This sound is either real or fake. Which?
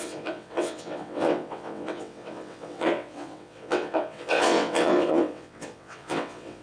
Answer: fake